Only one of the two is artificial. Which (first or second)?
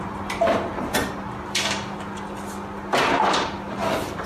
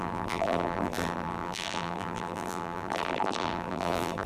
second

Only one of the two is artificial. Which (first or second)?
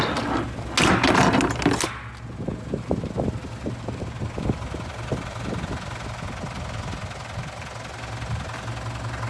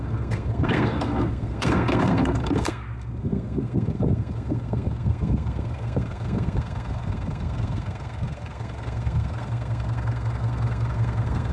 second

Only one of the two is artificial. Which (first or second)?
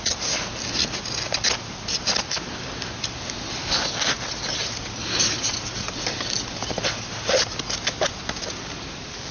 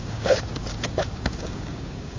second